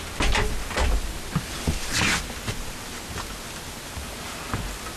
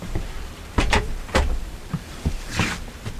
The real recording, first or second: first